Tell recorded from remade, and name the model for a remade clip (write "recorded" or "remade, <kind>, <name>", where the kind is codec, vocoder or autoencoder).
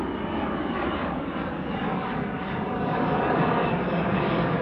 remade, codec, DAC